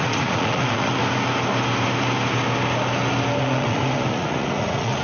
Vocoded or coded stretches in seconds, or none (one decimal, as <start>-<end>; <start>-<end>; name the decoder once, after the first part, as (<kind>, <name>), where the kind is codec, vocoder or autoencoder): 0.0-1.0 (vocoder, Vocos); 3.4-5.0